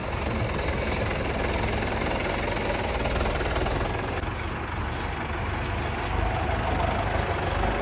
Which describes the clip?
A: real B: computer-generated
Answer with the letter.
A